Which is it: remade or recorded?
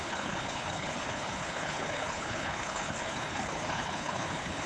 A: remade